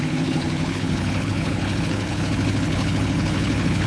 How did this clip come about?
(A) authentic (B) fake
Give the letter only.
B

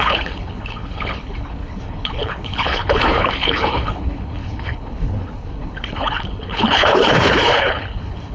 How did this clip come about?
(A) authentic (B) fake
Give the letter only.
B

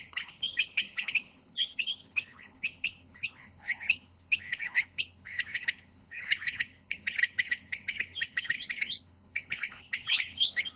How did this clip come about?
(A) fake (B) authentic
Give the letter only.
A